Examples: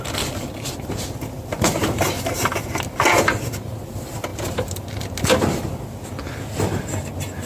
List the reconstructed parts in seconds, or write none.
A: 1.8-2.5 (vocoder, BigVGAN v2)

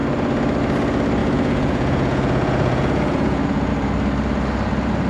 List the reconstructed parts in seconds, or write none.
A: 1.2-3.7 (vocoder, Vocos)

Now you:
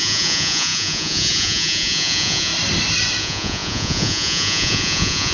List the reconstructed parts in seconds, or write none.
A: 0.0-2.5 (vocoder, Vocos); 3.2-5.3